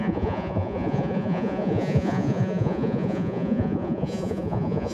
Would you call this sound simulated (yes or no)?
yes